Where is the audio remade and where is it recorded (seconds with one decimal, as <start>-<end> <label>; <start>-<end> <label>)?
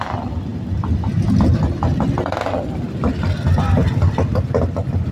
0.0-5.1 recorded